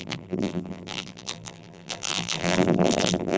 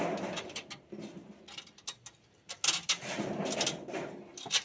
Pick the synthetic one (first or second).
first